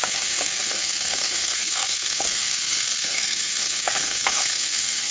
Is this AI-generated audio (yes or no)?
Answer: yes